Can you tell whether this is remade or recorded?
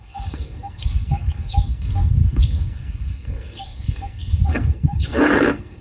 remade